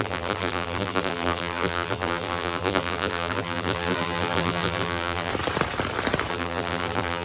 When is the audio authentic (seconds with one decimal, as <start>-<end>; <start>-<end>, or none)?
5.3-6.3